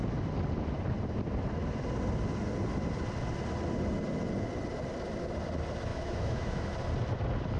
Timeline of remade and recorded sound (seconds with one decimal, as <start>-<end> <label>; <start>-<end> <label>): 0.0-5.9 recorded; 5.9-6.7 remade; 6.7-7.6 recorded